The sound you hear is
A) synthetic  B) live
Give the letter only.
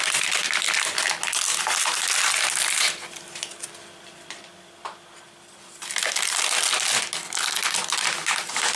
B